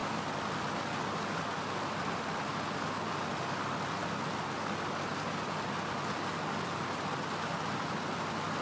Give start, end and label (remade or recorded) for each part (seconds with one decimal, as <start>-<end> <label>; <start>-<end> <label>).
0.0-8.6 recorded